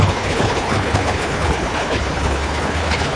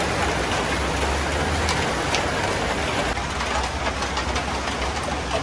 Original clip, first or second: second